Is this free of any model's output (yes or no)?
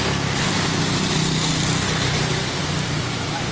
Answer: yes